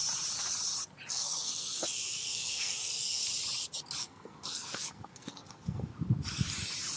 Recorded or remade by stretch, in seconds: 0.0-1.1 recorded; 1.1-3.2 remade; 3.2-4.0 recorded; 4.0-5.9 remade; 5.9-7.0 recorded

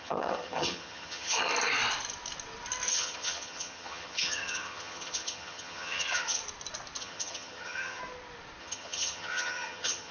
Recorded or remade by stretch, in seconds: 0.0-1.5 remade; 1.5-2.9 recorded; 2.9-6.4 remade; 6.4-7.0 recorded; 7.0-8.0 remade; 8.0-8.6 recorded; 8.6-10.1 remade

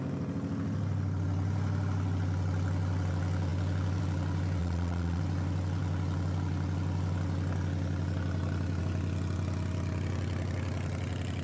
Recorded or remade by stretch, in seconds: 0.0-4.6 recorded; 4.6-5.2 remade; 5.2-11.4 recorded